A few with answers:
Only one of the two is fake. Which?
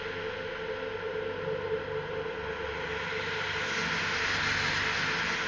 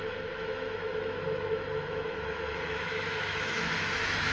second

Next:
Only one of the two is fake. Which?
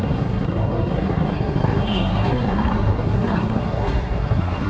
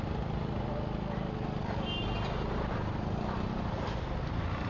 first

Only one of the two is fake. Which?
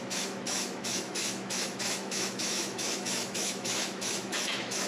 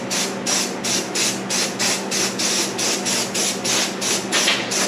first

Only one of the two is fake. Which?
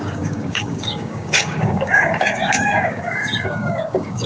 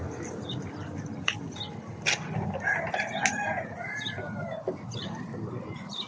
first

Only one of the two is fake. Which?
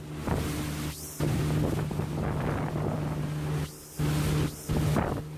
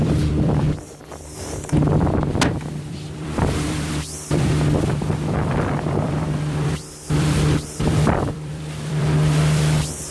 second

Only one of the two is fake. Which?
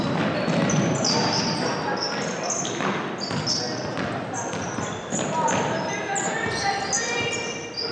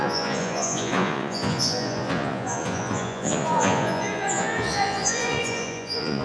second